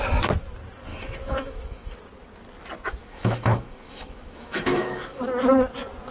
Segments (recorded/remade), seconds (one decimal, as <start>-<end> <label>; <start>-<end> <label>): 0.0-0.9 recorded; 0.9-1.9 remade; 1.9-3.0 recorded; 3.0-5.2 remade; 5.2-6.1 recorded